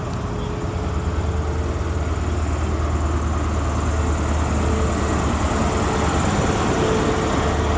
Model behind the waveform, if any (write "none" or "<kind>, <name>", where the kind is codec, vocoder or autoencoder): none